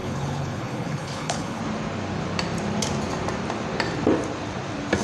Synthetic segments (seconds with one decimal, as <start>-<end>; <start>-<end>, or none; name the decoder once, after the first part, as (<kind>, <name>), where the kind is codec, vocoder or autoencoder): 0.0-1.6 (codec, HILCodec)